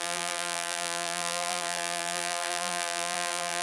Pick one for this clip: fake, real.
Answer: fake